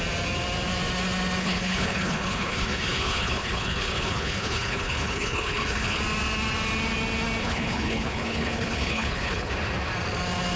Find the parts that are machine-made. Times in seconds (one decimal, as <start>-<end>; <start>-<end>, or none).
1.4-6.0; 7.4-9.5